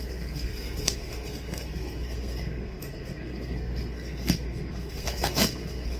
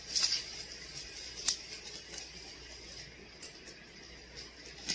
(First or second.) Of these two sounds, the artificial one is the first